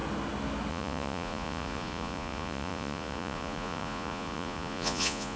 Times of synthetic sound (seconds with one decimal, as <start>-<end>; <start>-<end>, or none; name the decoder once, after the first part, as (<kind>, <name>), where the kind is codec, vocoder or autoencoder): 0.7-5.4 (vocoder, Vocos)